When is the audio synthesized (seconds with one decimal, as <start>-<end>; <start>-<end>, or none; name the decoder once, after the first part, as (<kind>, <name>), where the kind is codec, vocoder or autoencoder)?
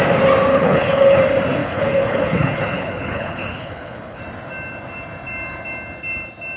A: 0.5-1.2 (codec, HILCodec); 1.6-4.2